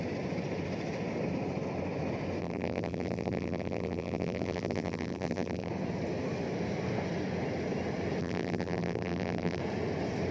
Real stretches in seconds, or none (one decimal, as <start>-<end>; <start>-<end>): 0.0-2.4; 5.7-8.2; 9.6-10.3